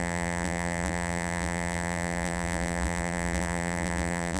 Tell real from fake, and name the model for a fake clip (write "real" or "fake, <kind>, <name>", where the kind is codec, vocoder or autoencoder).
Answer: fake, vocoder, BigVGAN v2